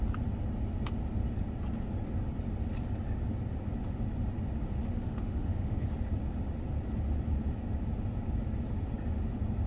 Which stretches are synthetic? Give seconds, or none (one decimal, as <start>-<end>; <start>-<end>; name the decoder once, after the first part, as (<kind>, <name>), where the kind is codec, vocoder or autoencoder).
4.8-5.9 (autoencoder, DAC-VAE)